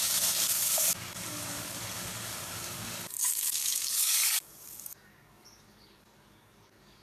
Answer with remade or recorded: remade